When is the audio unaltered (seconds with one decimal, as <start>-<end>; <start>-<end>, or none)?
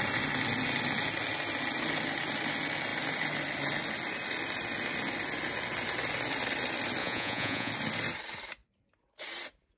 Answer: 0.0-7.0; 7.7-9.8